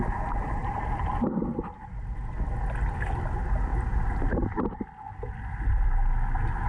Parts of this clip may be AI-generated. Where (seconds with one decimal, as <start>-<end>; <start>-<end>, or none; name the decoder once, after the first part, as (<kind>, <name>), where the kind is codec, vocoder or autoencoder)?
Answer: none